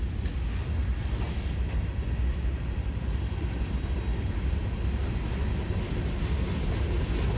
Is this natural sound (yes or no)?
yes